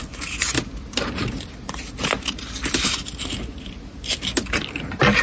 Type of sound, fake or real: real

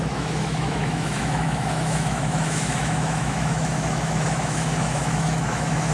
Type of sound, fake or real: fake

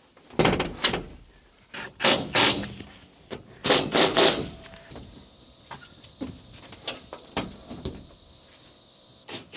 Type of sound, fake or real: fake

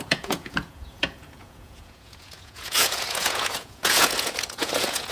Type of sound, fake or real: fake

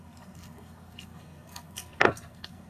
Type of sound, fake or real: fake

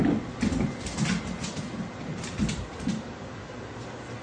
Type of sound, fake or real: real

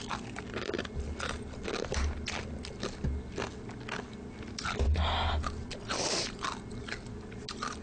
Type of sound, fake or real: real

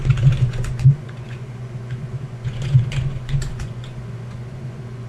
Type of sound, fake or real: fake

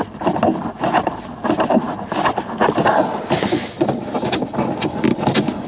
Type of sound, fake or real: real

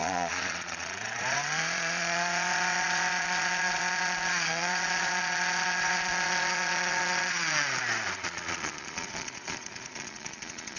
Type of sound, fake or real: fake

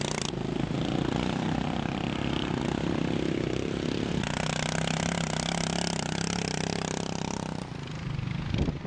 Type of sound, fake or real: real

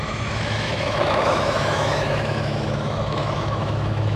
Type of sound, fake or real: fake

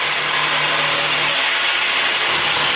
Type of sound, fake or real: real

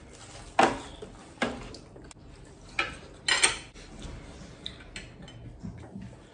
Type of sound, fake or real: real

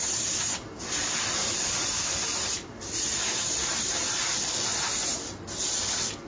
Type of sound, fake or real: real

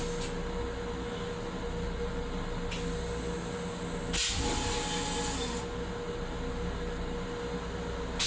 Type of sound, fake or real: real